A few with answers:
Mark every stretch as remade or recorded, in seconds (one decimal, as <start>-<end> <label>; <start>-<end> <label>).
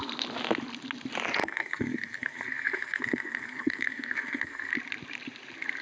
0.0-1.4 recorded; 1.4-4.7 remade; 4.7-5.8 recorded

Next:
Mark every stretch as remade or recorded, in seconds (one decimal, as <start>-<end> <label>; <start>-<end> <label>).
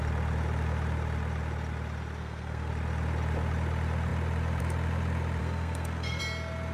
0.0-2.2 recorded; 2.2-2.7 remade; 2.7-5.4 recorded; 5.4-6.2 remade; 6.2-6.7 recorded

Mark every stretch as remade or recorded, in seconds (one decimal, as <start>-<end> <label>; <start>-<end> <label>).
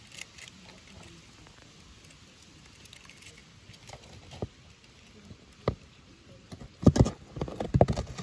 0.0-8.2 recorded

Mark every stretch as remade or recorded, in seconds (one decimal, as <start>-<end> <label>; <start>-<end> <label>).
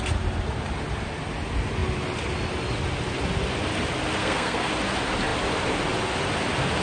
0.0-4.2 recorded; 4.2-4.7 remade; 4.7-6.8 recorded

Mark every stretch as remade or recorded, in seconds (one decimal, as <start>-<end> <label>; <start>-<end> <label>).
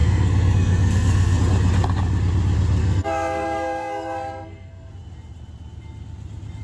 0.0-1.4 remade; 1.4-2.8 recorded; 2.8-4.9 remade; 4.9-6.6 recorded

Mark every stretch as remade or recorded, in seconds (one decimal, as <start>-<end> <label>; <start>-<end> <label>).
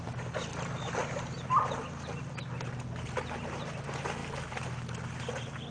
0.0-5.7 recorded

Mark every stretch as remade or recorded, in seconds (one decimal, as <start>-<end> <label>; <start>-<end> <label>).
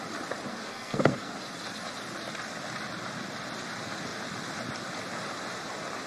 0.0-0.5 recorded; 0.5-1.3 remade; 1.3-6.1 recorded